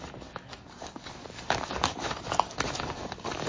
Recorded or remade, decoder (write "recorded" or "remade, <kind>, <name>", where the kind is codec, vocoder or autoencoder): remade, codec, DAC